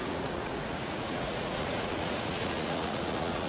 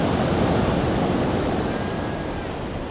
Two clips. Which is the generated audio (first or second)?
first